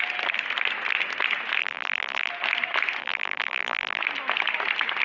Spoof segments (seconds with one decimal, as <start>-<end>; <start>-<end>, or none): 1.6-2.3; 3.0-4.0